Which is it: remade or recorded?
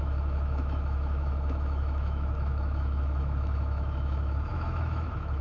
remade